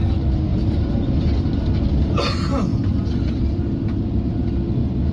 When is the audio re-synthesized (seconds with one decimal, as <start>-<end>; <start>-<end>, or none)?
0.5-1.6